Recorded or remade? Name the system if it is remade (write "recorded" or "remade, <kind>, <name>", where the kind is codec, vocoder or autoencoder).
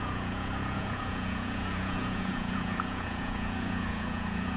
remade, vocoder, Vocos